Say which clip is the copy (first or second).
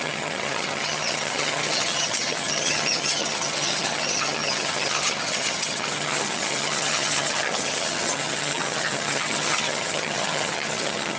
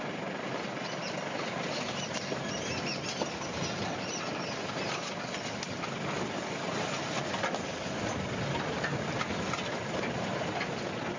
first